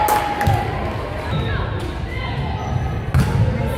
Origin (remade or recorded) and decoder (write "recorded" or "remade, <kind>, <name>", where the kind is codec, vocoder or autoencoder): recorded